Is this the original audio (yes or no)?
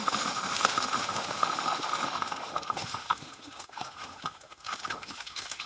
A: no